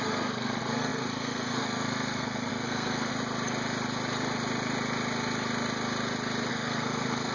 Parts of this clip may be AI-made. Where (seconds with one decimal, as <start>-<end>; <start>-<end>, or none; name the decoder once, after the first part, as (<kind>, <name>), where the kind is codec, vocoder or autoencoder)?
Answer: 0.0-3.1 (codec, SNAC); 6.5-7.3